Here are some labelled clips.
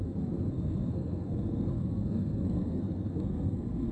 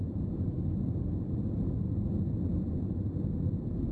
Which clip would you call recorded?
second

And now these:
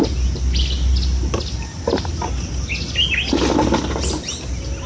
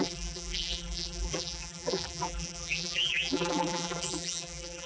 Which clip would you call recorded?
first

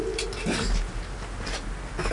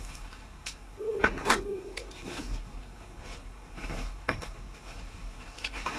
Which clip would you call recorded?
first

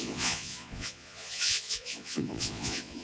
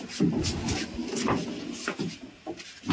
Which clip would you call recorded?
second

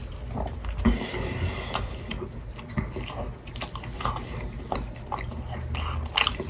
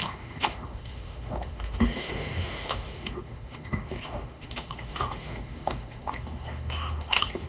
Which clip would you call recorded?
first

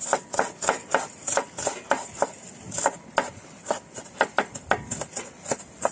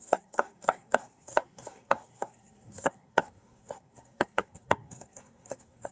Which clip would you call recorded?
first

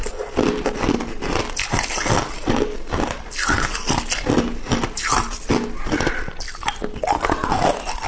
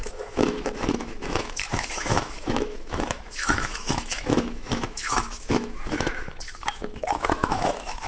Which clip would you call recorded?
first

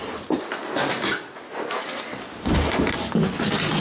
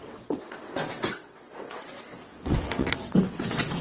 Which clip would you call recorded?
first